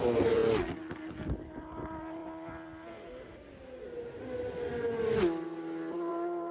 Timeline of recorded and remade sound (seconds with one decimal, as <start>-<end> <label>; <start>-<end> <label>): 0.0-0.4 remade; 0.4-1.6 recorded; 1.6-2.2 remade; 2.2-6.1 recorded; 6.1-6.5 remade